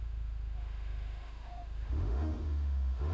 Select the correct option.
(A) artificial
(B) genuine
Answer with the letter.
A